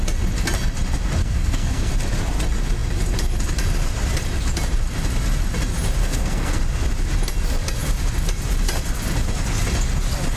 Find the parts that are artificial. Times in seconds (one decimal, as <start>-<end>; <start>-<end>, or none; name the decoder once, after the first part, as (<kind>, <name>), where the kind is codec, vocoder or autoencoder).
1.2-1.9 (codec, SNAC); 6.0-6.6

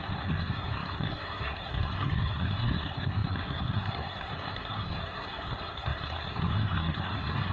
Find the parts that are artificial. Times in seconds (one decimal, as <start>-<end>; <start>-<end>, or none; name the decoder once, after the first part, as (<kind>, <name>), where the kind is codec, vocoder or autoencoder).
0.0-7.5 (codec, SNAC)

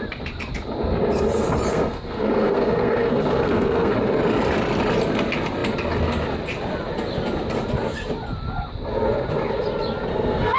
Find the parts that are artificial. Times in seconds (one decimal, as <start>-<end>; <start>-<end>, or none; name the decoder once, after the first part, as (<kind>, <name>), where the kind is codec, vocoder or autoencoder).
1.7-3.9 (codec, SNAC); 10.1-10.6

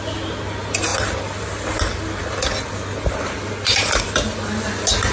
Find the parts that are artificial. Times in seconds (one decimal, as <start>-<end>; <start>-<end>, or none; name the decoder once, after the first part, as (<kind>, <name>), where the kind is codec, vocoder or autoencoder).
none

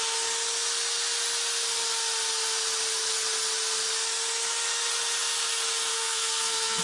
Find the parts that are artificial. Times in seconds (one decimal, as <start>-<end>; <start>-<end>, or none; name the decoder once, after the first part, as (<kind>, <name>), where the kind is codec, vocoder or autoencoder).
5.9-6.8 (codec, SNAC)

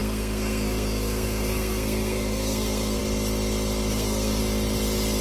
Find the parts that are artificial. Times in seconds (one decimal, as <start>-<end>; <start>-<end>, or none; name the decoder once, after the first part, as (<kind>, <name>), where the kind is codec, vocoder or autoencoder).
0.0-3.0 (codec, SNAC); 3.9-4.4

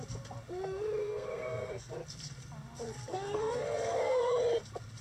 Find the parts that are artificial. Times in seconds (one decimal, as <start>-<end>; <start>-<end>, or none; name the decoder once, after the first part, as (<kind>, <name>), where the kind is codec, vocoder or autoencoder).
1.0-1.9 (codec, SNAC); 3.1-4.3

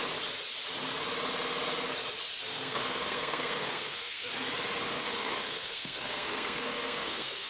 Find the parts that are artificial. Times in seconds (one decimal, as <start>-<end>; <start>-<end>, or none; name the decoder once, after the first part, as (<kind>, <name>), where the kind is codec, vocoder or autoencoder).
2.5-4.3 (codec, SNAC); 4.9-7.5